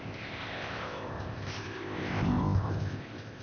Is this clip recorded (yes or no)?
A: no